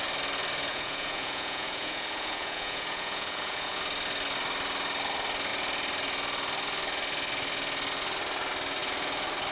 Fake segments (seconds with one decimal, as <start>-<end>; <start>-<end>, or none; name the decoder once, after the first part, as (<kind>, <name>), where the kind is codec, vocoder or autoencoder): 0.7-3.8 (vocoder, Vocos)